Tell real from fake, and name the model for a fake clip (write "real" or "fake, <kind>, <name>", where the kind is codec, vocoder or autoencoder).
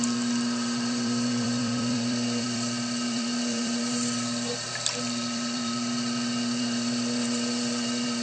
fake, vocoder, BigVGAN v2